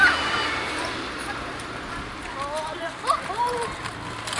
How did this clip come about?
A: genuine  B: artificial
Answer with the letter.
A